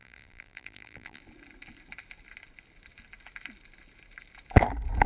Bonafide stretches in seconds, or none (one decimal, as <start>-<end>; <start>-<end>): 1.2-5.1